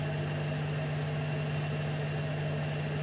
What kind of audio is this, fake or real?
real